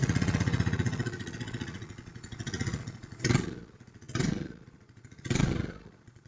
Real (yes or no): no